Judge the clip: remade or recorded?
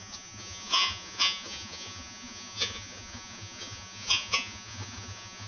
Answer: remade